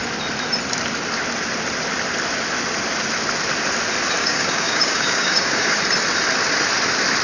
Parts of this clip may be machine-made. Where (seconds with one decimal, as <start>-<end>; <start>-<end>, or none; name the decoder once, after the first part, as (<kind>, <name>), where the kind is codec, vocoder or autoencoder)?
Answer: 4.2-5.8 (codec, DAC)